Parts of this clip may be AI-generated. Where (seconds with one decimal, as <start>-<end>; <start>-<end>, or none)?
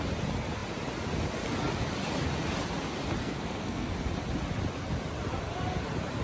3.2-3.9